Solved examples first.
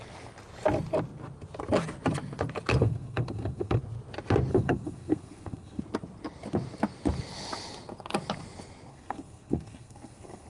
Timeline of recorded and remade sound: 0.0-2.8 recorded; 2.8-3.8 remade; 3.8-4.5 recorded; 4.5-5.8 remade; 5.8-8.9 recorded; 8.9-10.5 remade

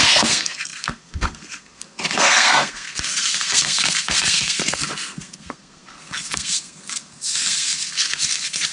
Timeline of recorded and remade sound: 0.0-8.7 remade

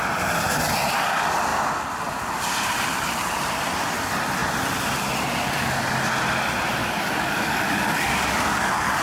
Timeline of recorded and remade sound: 0.0-6.8 recorded; 6.8-9.0 remade

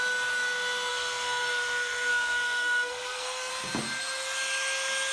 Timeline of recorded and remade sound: 0.0-0.9 recorded; 0.9-3.5 remade; 3.5-5.1 recorded

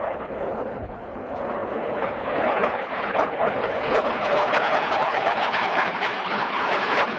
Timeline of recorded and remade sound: 0.0-7.2 remade

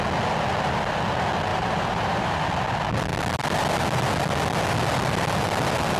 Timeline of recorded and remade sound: 0.0-1.5 recorded; 1.5-2.4 remade; 2.4-6.0 recorded

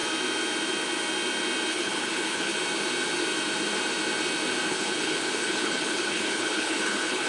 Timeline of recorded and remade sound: 0.0-1.7 recorded; 1.7-2.5 remade; 2.5-4.7 recorded; 4.7-7.3 remade

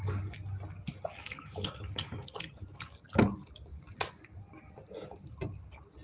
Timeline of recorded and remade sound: 0.0-1.2 recorded; 1.2-1.7 remade; 1.7-6.0 recorded